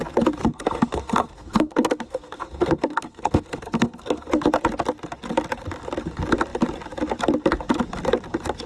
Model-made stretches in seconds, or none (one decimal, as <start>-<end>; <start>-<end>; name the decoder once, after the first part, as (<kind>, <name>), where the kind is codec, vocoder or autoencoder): 0.4-4.3 (codec, SNAC)